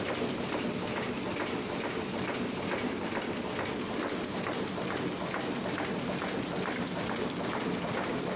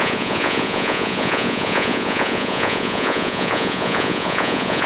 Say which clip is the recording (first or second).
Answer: first